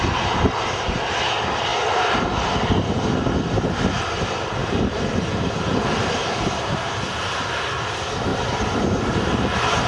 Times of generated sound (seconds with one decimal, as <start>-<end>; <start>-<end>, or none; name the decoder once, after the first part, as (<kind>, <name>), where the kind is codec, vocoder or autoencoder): 4.6-5.3 (vocoder, BigVGAN v2); 6.2-7.5; 8.3-9.9